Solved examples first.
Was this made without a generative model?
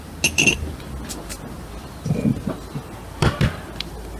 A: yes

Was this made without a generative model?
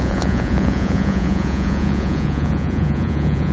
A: no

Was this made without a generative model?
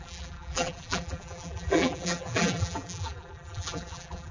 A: no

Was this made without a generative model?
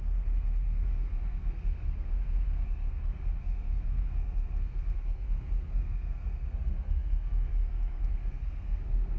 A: no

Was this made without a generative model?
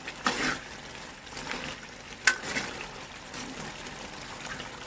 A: yes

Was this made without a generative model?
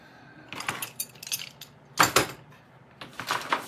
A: yes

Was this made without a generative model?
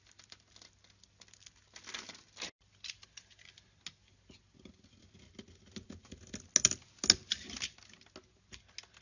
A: yes